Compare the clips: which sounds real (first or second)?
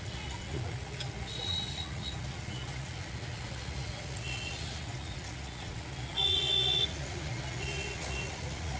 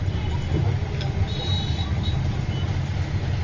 second